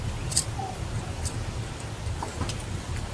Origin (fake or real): fake